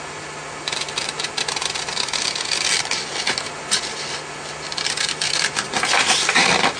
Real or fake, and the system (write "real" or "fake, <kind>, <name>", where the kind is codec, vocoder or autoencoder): real